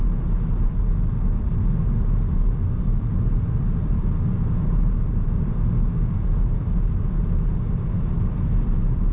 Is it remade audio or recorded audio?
recorded